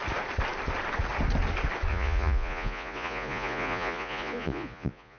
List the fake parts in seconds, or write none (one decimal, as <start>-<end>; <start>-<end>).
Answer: 1.9-5.2